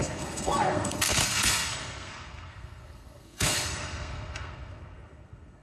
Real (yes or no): no